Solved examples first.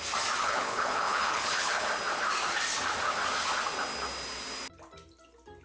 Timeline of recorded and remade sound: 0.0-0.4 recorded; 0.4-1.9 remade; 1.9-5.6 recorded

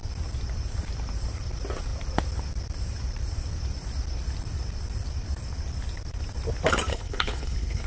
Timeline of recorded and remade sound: 0.0-6.9 recorded; 6.9-7.9 remade